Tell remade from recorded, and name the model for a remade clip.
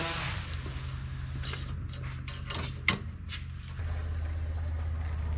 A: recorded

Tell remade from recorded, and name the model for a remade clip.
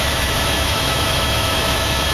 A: remade, autoencoder, DAC-VAE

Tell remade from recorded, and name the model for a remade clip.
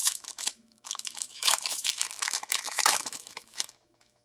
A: remade, autoencoder, DAC-VAE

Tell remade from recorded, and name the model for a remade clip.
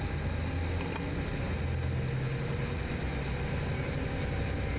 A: recorded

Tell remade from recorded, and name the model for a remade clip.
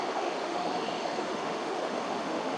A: remade, autoencoder, DAC-VAE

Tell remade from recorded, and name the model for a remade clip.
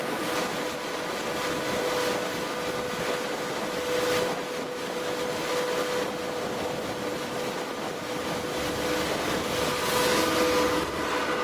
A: recorded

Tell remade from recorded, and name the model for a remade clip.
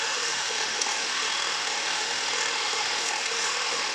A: remade, autoencoder, DAC-VAE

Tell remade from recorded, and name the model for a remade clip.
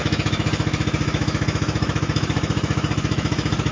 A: remade, autoencoder, DAC-VAE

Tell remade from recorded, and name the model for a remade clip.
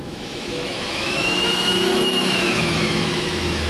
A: remade, autoencoder, DAC-VAE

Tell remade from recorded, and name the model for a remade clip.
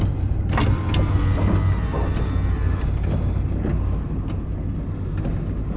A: recorded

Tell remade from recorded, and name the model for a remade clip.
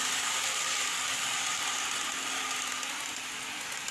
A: recorded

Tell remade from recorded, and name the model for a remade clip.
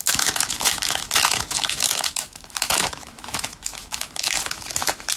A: remade, autoencoder, DAC-VAE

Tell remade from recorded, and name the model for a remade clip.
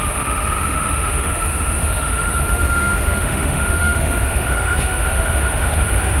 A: remade, autoencoder, DAC-VAE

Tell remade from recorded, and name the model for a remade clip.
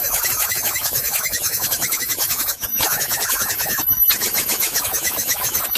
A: remade, autoencoder, DAC-VAE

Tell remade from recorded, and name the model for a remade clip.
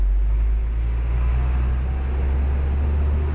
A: recorded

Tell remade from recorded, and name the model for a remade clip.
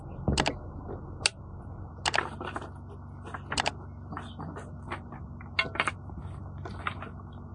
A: recorded